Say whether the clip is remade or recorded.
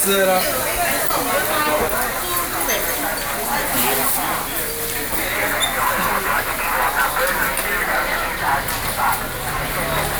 recorded